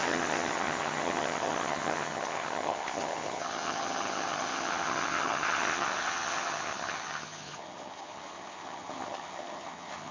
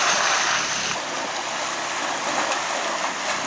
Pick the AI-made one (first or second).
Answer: first